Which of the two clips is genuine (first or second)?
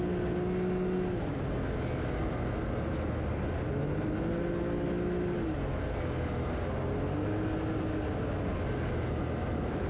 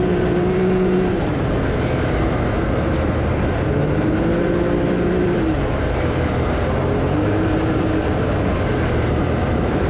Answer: first